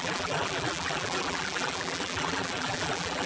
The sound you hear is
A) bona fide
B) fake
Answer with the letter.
B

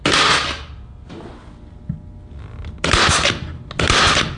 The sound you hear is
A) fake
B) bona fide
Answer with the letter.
B